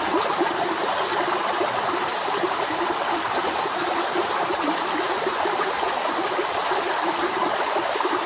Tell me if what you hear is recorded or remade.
recorded